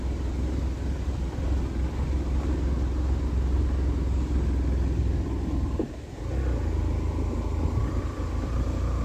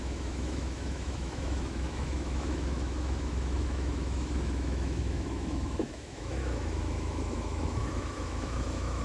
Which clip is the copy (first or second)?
second